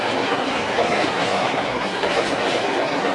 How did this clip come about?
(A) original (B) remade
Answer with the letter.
B